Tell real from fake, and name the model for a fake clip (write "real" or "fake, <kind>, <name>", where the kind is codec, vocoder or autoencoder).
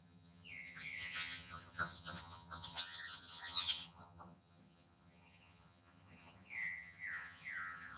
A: fake, vocoder, HiFi-GAN